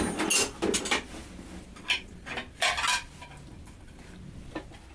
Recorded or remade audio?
recorded